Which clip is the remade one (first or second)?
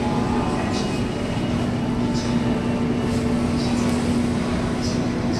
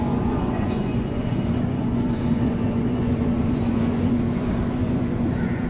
second